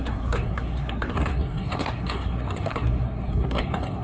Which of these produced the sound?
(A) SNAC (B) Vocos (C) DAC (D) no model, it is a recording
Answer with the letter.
A